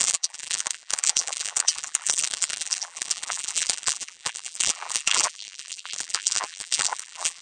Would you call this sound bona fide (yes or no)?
no